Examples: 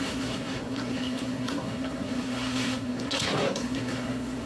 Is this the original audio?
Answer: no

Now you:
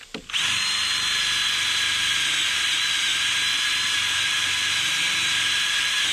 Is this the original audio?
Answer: yes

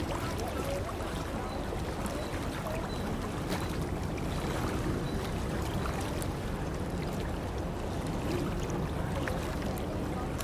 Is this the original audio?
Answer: yes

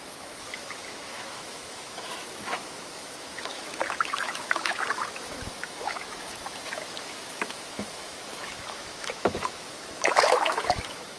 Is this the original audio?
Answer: no